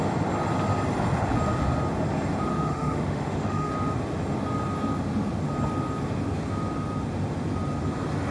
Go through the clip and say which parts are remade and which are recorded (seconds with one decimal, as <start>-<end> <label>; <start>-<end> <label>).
0.0-2.5 recorded; 2.5-3.7 remade; 3.7-8.3 recorded